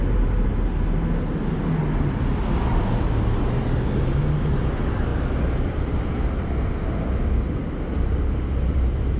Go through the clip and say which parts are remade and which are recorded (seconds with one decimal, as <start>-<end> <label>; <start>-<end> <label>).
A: 0.0-2.7 recorded; 2.7-3.8 remade; 3.8-9.2 recorded